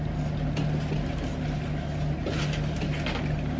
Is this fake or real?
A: real